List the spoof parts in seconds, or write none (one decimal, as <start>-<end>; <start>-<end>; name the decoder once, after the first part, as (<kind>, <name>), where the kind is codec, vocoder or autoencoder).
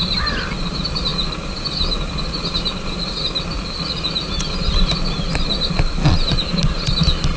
none